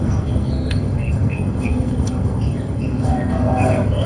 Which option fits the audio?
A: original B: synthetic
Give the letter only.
B